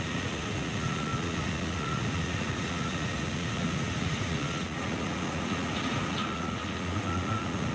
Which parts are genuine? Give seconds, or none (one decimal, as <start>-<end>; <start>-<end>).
none